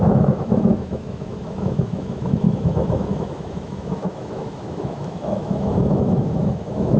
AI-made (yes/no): yes